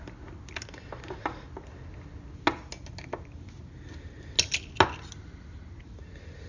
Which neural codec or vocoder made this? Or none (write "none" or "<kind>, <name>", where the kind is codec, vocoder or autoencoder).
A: none